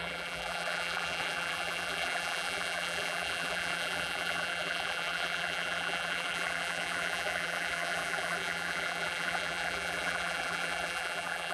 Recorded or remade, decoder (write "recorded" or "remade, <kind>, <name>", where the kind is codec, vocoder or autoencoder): remade, vocoder, BigVGAN v2